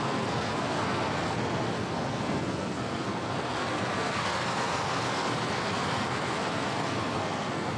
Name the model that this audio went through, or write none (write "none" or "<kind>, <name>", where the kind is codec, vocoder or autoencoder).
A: codec, SNAC